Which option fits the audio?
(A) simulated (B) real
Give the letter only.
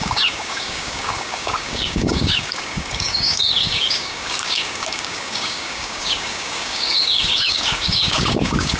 A